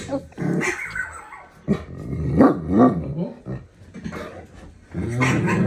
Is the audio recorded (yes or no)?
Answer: yes